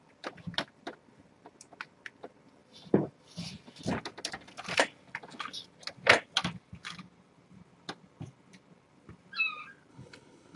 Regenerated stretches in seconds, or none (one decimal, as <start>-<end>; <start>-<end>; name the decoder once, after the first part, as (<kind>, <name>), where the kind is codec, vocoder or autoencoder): 9.9-10.6 (codec, HILCodec)

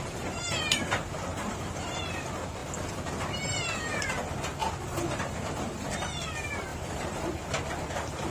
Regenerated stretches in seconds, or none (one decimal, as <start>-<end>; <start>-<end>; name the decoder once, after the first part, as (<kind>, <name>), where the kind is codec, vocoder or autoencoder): 1.3-2.0 (vocoder, BigVGAN v2); 6.7-7.3

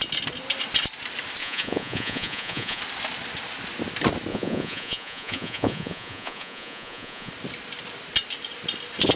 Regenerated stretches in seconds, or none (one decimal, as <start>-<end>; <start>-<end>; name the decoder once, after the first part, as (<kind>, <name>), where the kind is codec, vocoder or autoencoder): 1.4-2.8 (vocoder, Vocos); 4.3-7.3

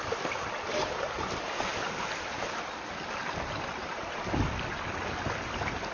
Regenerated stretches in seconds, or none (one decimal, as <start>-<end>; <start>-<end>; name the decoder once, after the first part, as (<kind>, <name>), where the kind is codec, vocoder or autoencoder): none